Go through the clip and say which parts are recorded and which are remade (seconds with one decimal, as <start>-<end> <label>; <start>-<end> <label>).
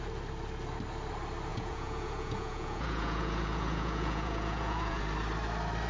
0.0-1.5 recorded; 1.5-5.0 remade; 5.0-5.9 recorded